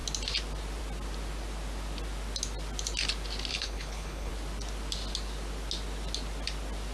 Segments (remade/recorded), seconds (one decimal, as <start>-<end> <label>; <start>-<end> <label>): 0.0-3.5 recorded; 3.5-4.3 remade; 4.3-6.9 recorded